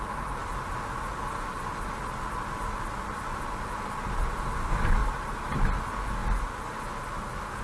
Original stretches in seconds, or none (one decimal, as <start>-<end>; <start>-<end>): 0.0-5.0; 5.6-7.6